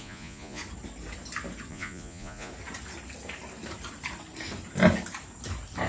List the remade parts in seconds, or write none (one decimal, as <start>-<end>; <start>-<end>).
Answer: 0.0-0.6; 1.7-2.5